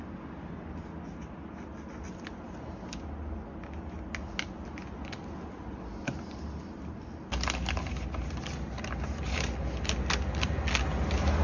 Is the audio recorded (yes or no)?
yes